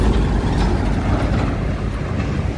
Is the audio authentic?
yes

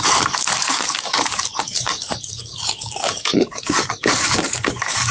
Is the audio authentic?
no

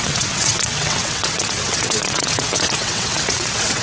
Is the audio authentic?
no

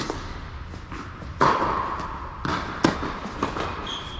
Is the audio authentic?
yes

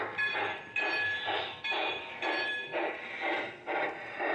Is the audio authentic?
no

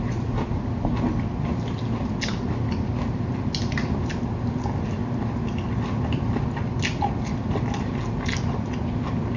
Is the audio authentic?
yes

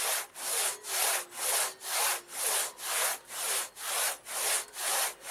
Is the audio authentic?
yes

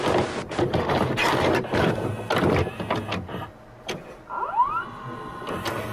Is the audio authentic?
yes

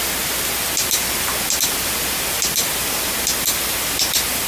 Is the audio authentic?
yes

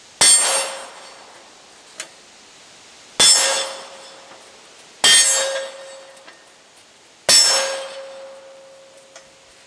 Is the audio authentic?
yes